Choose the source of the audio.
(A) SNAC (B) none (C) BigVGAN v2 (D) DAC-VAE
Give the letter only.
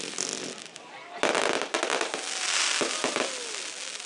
B